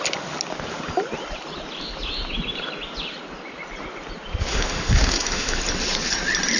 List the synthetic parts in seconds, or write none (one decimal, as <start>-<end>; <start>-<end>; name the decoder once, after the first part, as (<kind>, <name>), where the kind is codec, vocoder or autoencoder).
4.5-5.6 (autoencoder, DAC-VAE)